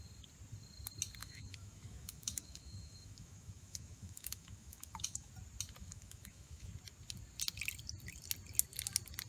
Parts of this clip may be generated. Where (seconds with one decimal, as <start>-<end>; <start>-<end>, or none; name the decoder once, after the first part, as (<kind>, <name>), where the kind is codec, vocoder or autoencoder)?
1.2-5.3 (autoencoder, DAC-VAE); 5.8-6.7